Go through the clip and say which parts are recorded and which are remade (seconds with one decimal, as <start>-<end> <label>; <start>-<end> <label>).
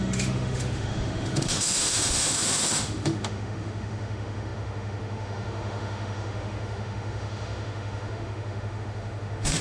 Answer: 0.0-9.6 remade